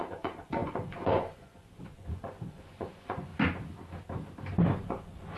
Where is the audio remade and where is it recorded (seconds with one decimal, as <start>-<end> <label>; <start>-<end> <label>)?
0.0-3.3 remade; 3.3-4.8 recorded; 4.8-5.4 remade